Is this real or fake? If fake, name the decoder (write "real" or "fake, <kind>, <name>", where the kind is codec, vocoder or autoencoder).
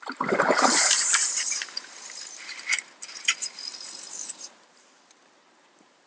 fake, vocoder, BigVGAN v2